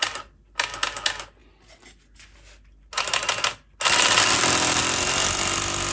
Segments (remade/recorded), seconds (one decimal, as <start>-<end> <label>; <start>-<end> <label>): 0.0-5.9 recorded